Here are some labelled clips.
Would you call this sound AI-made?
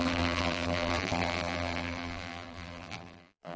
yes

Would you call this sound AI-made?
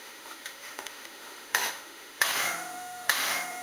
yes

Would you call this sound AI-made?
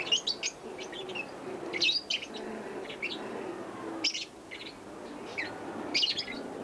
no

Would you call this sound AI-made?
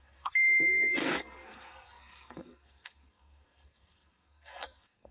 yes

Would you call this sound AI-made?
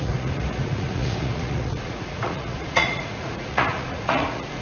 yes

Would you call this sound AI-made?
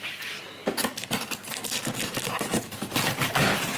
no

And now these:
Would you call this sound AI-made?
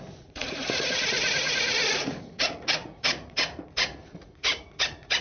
yes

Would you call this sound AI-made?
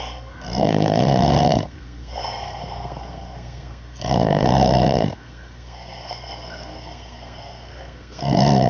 yes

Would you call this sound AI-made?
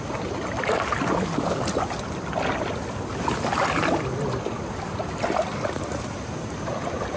no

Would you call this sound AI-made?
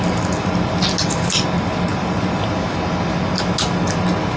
no